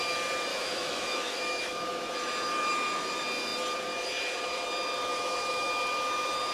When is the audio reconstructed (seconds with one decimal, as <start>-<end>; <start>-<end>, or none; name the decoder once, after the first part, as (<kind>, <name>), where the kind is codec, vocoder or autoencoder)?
0.5-2.1 (autoencoder, DAC-VAE); 5.1-5.7